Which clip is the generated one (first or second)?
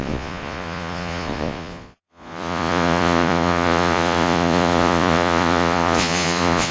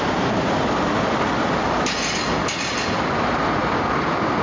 first